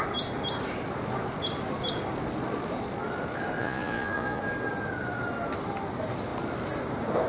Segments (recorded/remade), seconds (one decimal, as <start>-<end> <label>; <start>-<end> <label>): 0.0-3.6 recorded; 3.6-4.4 remade; 4.4-7.3 recorded